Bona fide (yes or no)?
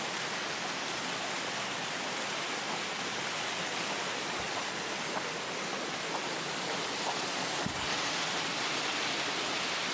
yes